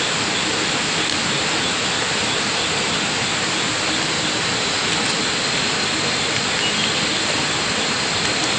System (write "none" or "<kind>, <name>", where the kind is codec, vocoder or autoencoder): none